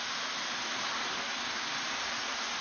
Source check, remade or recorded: recorded